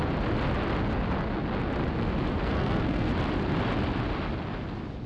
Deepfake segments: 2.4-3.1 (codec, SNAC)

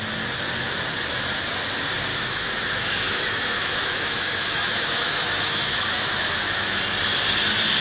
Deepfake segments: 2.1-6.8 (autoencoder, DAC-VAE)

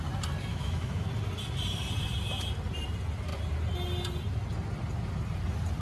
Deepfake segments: 0.5-1.1 (autoencoder, DAC-VAE)